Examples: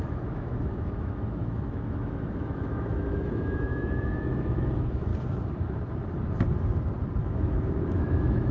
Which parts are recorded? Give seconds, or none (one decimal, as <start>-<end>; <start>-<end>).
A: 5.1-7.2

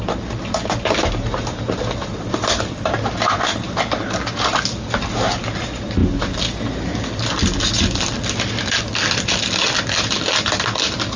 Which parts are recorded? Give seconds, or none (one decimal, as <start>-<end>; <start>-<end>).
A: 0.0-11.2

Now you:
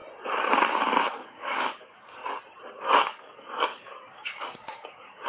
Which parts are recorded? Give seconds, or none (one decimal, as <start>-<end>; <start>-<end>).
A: 0.0-1.1; 2.2-2.7

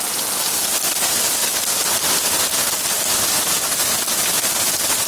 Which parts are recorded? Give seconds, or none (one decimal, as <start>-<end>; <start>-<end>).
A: 0.0-5.1

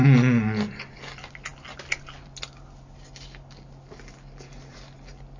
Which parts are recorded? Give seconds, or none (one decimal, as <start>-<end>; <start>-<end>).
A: 0.0-5.4